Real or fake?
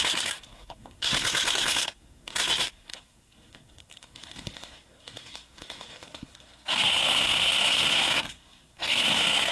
fake